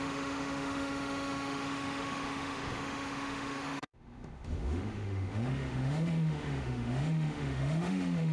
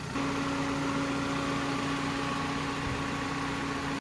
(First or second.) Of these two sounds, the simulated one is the first